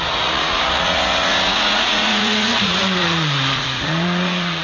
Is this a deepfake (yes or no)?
yes